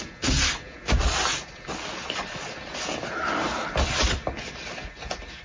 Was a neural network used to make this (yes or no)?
no